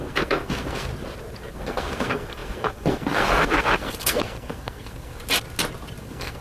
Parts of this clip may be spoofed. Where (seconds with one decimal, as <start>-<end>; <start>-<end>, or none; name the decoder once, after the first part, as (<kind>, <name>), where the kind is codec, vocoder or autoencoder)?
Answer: 0.0-0.9 (codec, SNAC); 1.5-5.2; 6.0-6.4